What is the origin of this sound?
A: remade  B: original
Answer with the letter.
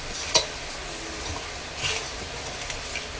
B